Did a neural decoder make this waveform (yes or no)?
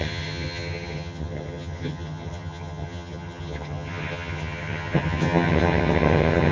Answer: yes